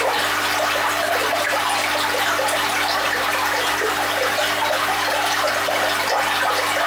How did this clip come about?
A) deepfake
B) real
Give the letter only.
A